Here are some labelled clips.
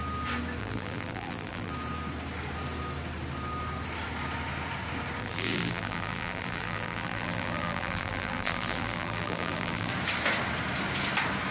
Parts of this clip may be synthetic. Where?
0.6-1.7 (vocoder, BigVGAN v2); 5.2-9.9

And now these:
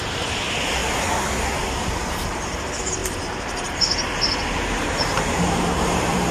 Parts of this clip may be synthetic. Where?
0.0-0.8 (vocoder, BigVGAN v2); 1.6-6.3

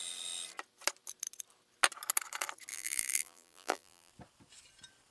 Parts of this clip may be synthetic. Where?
2.7-4.1 (vocoder, BigVGAN v2)

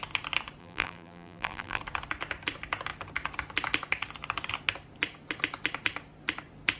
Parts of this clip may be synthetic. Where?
0.6-1.8 (vocoder, BigVGAN v2)

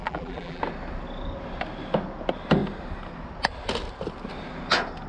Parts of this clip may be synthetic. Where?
0.0-0.6 (vocoder, BigVGAN v2)

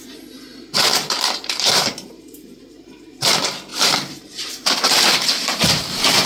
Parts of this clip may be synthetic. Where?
0.9-2.6 (vocoder, BigVGAN v2); 3.7-5.6